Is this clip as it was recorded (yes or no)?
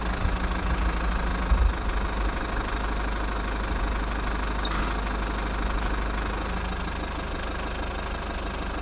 yes